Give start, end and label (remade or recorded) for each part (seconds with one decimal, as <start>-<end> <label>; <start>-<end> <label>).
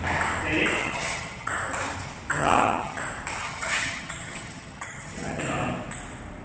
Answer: 0.0-0.8 recorded; 0.8-1.5 remade; 1.5-2.4 recorded; 2.4-3.0 remade; 3.0-3.4 recorded; 3.4-5.4 remade; 5.4-6.4 recorded